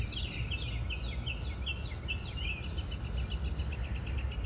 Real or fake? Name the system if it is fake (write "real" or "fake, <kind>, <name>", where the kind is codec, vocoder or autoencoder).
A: real